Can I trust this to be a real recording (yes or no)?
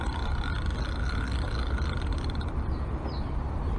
yes